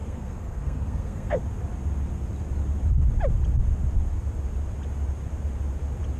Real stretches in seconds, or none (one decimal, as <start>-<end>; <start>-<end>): 1.4-6.2